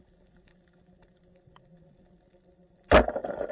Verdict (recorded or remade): recorded